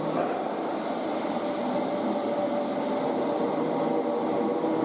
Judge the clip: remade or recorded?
recorded